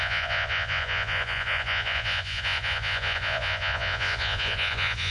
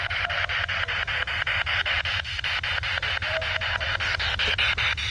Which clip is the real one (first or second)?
second